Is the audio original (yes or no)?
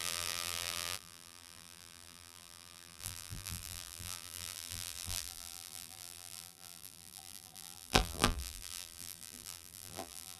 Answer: no